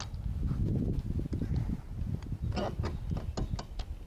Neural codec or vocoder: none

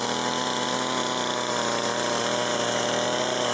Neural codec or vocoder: none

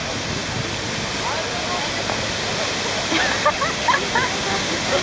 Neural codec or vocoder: none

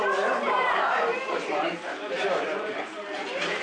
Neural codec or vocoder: vocoder, BigVGAN v2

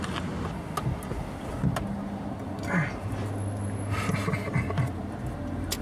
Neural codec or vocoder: none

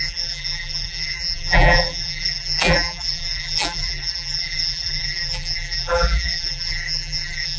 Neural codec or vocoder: vocoder, BigVGAN v2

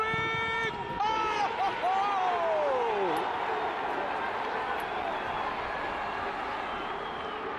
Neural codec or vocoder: none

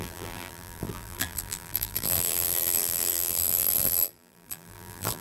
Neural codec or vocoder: vocoder, BigVGAN v2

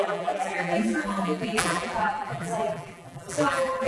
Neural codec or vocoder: vocoder, BigVGAN v2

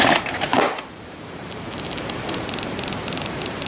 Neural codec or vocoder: vocoder, BigVGAN v2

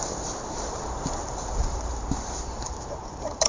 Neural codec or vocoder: vocoder, BigVGAN v2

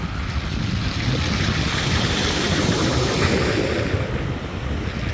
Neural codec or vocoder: none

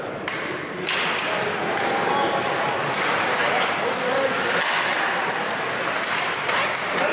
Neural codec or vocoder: vocoder, BigVGAN v2